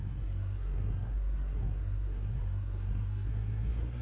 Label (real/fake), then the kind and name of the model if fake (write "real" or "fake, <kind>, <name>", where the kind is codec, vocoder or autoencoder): fake, codec, SNAC